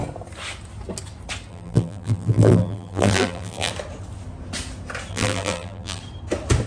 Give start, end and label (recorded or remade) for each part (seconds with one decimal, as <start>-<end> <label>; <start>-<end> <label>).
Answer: 0.0-1.5 recorded; 1.5-3.7 remade; 3.7-5.1 recorded; 5.1-6.0 remade; 6.0-6.7 recorded